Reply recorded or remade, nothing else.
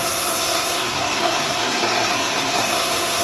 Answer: remade